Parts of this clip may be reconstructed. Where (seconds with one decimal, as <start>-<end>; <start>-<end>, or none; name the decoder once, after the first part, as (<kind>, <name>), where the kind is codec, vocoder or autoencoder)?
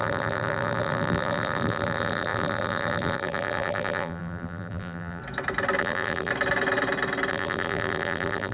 0.0-5.2 (vocoder, BigVGAN v2); 5.8-6.3; 7.3-8.5